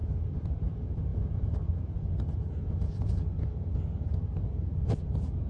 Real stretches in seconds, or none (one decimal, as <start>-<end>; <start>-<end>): 3.1-4.4